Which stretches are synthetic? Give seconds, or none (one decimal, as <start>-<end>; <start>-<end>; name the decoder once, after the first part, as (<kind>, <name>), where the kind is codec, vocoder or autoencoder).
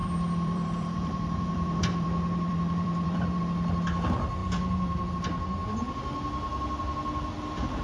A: 0.0-3.4 (vocoder, BigVGAN v2); 4.4-5.1